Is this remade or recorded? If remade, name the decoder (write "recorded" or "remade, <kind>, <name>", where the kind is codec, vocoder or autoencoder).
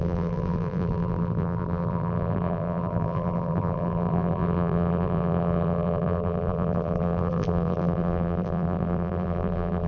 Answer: remade, vocoder, BigVGAN v2